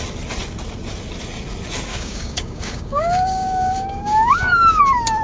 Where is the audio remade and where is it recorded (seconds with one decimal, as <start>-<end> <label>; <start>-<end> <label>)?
0.0-1.9 recorded; 1.9-4.8 remade; 4.8-5.2 recorded